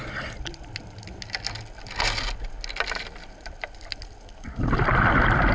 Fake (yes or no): no